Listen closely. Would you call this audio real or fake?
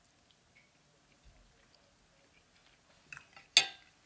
real